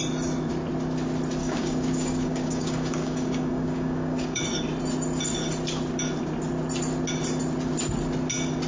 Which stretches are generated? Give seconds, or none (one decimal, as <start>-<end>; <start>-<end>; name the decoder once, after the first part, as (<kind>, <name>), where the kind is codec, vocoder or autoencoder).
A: 1.4-4.4 (codec, DAC)